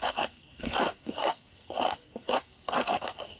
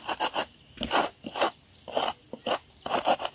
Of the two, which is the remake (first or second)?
first